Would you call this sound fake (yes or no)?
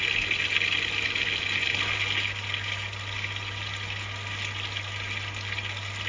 no